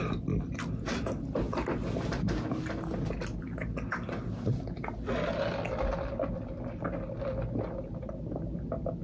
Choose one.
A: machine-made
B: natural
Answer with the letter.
B